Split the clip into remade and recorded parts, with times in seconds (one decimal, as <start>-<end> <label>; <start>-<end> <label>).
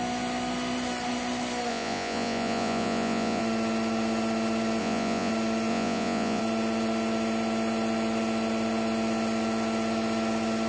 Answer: 0.0-1.7 recorded; 1.7-3.4 remade; 3.4-4.8 recorded; 4.8-5.3 remade; 5.3-5.7 recorded; 5.7-6.4 remade; 6.4-10.7 recorded